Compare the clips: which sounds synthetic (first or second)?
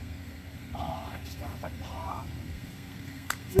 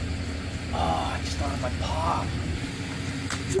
first